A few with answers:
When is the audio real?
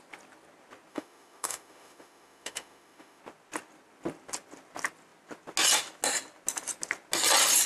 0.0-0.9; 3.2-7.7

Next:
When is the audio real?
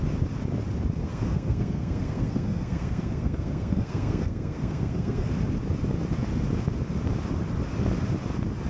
0.0-1.0; 5.3-8.7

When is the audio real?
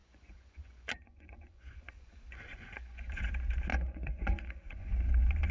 3.3-3.7; 4.9-5.5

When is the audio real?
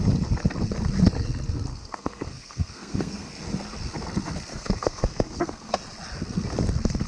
0.0-1.7; 3.4-4.5; 5.7-7.1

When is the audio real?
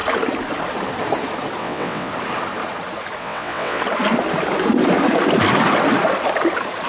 0.0-1.6; 2.1-3.2; 3.8-6.9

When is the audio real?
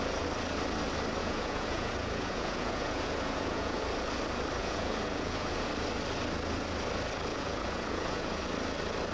0.0-1.2; 3.8-4.6; 5.7-7.3; 8.4-9.1